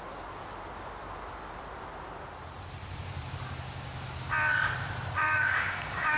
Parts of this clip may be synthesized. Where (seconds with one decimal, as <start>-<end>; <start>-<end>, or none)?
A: 5.2-6.2